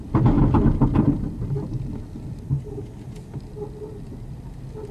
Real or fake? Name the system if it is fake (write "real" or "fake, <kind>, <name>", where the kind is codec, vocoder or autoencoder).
real